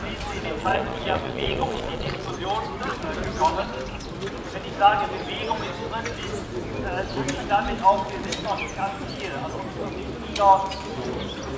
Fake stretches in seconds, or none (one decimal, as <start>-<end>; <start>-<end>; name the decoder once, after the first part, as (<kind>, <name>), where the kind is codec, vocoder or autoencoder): 0.6-2.3 (vocoder, Vocos)